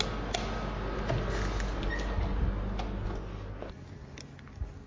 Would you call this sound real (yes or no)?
yes